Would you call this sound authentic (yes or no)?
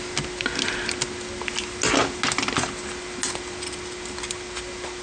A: yes